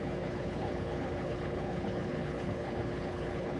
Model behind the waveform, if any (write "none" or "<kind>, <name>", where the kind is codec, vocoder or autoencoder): codec, HILCodec